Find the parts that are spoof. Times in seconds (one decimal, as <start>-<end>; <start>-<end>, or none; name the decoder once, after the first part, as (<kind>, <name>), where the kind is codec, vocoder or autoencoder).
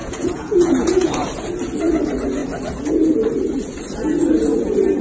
0.0-1.1 (vocoder, Vocos)